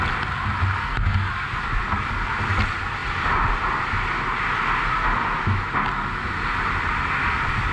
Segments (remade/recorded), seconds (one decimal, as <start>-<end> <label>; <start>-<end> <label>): 0.0-0.8 recorded; 0.8-1.3 remade; 1.3-7.7 recorded